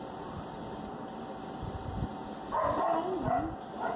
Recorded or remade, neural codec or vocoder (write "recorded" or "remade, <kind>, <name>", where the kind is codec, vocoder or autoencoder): recorded